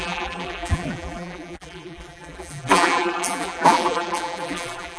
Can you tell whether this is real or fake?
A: fake